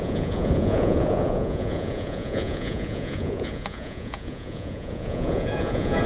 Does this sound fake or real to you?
fake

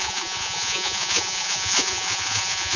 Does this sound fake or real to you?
fake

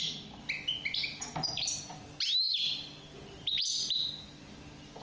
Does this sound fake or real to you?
real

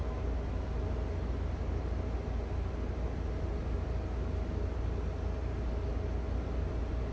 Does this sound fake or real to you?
real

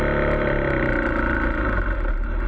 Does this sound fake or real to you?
real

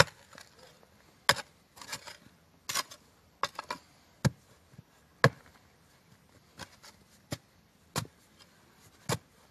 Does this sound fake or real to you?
real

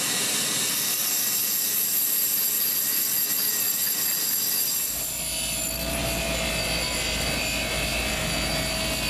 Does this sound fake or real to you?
real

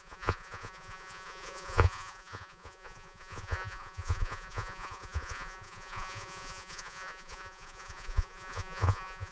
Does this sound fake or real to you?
fake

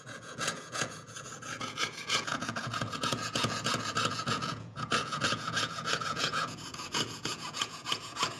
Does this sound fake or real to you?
fake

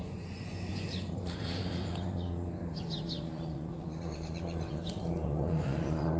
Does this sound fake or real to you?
fake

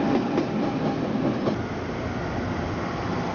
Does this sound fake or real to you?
real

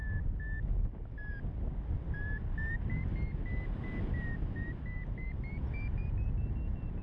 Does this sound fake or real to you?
real